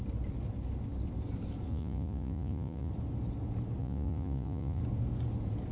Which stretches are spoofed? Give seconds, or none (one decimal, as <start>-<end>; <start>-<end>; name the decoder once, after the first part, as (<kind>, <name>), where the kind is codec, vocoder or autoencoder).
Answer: 1.7-2.9 (vocoder, Vocos); 3.8-4.8